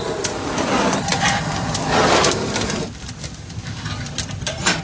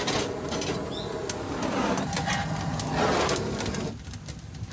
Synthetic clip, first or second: first